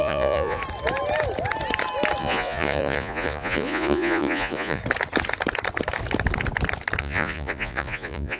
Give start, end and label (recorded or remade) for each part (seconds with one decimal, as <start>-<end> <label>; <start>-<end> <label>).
0.0-0.6 remade; 0.6-2.2 recorded; 2.2-4.8 remade; 4.8-7.0 recorded; 7.0-8.4 remade